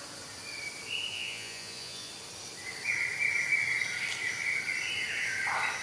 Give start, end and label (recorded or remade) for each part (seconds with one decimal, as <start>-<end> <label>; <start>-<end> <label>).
0.0-1.1 recorded; 1.1-2.1 remade; 2.1-5.8 recorded